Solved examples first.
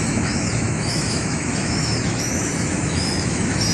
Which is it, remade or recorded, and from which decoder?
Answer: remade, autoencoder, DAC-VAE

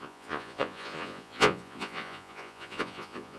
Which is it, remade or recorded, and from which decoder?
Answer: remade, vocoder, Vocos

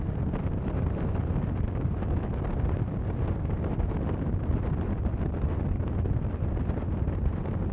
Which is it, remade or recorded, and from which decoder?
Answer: recorded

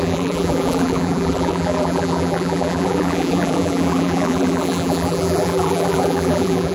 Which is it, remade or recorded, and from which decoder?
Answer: remade, vocoder, BigVGAN v2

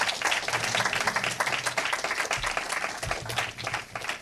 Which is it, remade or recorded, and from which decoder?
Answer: recorded